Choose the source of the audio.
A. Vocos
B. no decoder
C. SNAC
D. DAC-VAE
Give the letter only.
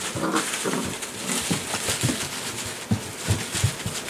B